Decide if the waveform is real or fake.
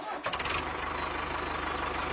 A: real